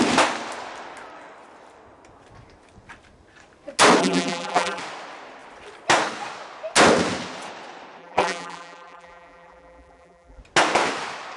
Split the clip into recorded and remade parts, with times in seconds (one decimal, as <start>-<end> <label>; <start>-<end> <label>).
0.0-4.0 recorded; 4.0-4.8 remade; 4.8-8.0 recorded; 8.0-10.4 remade; 10.4-11.4 recorded

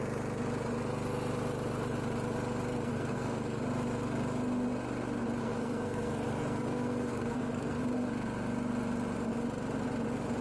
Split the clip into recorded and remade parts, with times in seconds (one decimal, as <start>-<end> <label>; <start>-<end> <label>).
0.0-2.7 recorded; 2.7-3.6 remade; 3.6-5.4 recorded; 5.4-7.8 remade; 7.8-10.4 recorded

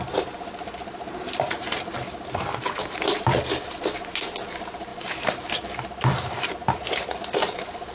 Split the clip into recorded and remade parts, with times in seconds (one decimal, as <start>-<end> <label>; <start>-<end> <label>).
0.0-7.9 recorded

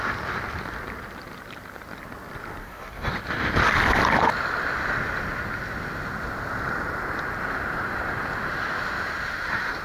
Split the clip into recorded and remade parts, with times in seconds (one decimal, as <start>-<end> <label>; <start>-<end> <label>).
0.0-2.6 recorded; 2.6-3.1 remade; 3.1-9.8 recorded

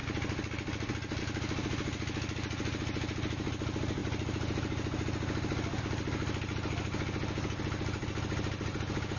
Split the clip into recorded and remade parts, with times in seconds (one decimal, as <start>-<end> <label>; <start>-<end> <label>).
0.0-9.2 recorded